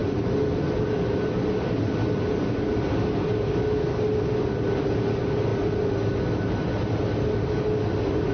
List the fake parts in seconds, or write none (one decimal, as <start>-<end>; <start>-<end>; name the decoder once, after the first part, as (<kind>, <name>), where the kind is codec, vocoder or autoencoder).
none